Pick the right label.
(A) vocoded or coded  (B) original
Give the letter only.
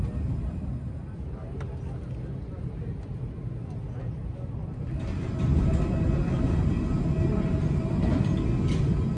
B